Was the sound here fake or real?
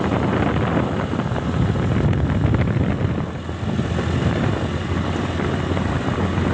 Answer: real